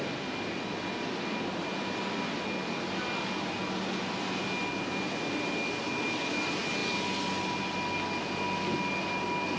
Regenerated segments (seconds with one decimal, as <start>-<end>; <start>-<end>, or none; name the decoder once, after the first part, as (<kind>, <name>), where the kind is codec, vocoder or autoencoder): none